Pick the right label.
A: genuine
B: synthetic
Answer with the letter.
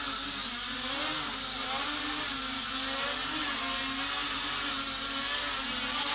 A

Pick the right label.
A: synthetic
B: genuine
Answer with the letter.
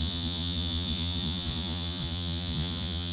A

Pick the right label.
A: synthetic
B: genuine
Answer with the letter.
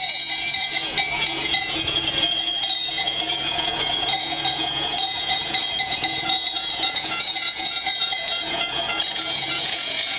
A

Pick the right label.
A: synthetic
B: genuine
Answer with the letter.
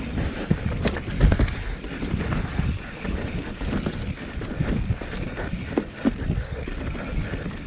B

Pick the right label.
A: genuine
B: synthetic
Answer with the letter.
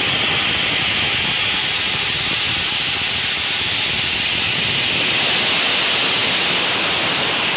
A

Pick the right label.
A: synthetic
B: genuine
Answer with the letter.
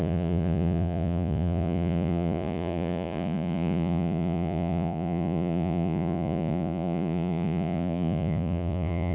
A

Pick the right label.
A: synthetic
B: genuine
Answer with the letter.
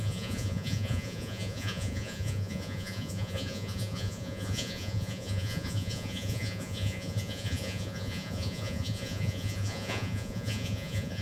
A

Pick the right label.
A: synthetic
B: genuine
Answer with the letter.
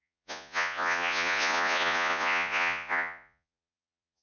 A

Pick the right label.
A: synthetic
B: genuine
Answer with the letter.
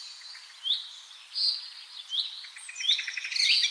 B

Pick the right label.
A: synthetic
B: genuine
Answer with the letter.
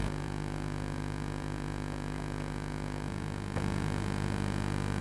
A